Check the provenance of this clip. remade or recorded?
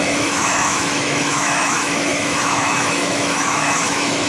remade